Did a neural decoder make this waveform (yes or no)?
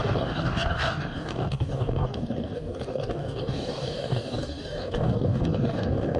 yes